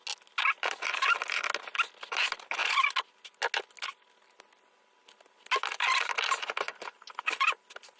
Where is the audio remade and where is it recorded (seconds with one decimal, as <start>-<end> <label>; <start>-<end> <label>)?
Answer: 0.0-8.0 recorded